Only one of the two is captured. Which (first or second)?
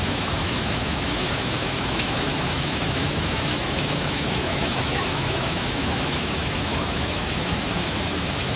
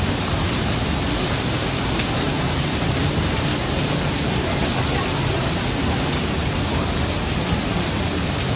second